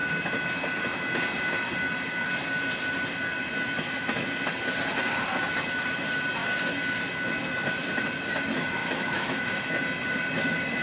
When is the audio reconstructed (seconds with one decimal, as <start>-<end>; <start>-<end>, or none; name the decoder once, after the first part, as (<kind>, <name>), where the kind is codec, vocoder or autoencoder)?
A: 8.8-9.4 (autoencoder, DAC-VAE)